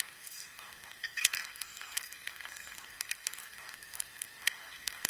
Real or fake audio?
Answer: fake